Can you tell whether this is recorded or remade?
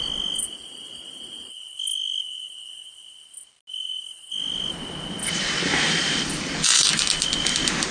recorded